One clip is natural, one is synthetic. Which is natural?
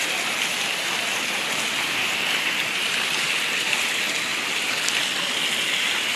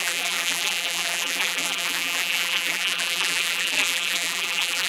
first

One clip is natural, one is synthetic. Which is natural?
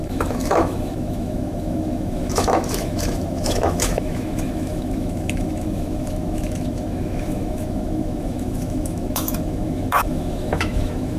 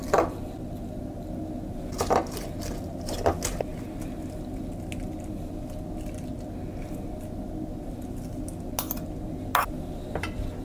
second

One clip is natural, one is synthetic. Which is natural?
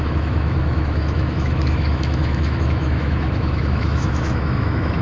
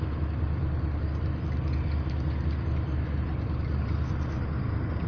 second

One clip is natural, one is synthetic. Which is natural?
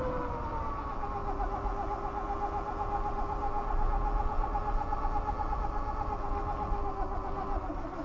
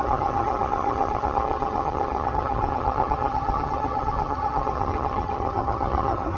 first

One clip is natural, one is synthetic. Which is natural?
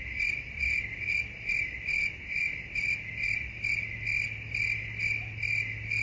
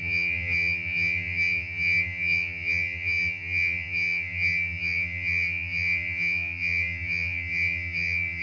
first